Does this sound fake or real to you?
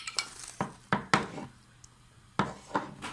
real